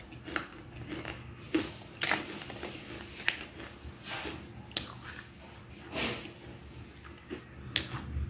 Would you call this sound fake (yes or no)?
no